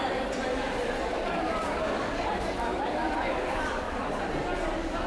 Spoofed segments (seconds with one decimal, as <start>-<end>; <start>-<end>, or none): 1.1-4.2